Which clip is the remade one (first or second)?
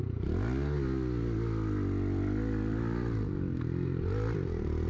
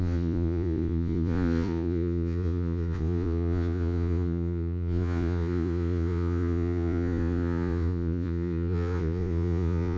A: second